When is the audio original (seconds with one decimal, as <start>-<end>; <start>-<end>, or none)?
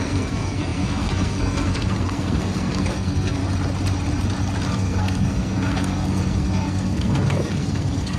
3.4-4.7